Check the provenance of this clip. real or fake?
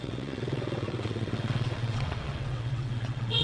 fake